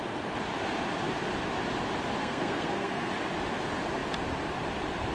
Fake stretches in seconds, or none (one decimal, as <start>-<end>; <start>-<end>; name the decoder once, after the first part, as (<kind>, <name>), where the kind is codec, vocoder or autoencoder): 2.2-3.1 (codec, SNAC)